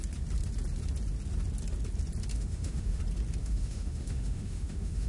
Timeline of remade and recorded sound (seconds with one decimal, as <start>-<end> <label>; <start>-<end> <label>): 0.0-2.3 recorded; 2.3-3.0 remade; 3.0-3.4 recorded; 3.4-5.1 remade